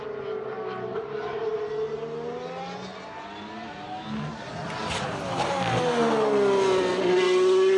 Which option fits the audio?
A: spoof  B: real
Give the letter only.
B